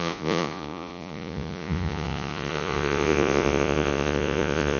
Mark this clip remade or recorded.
remade